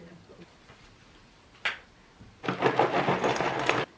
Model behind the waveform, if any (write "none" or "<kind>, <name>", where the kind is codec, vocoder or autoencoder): none